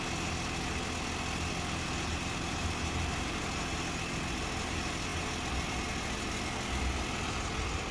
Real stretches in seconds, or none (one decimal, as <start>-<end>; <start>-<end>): 0.0-2.1; 3.4-7.9